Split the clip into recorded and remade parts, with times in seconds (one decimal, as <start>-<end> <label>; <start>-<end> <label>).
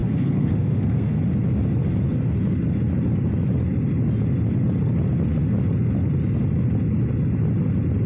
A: 0.0-1.2 remade; 1.2-8.1 recorded